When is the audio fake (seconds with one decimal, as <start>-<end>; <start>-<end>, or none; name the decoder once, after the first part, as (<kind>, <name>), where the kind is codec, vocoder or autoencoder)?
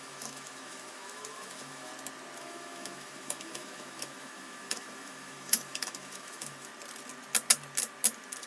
0.0-1.9 (autoencoder, DAC-VAE); 2.4-6.7